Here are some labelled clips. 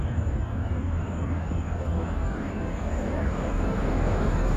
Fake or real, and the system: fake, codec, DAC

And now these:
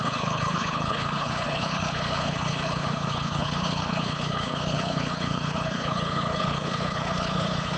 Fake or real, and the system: fake, codec, HILCodec